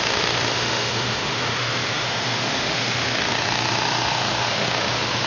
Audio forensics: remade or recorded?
remade